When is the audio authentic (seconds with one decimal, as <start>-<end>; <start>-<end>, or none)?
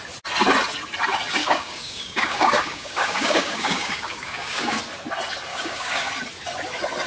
0.0-1.4; 4.8-5.5; 6.1-7.1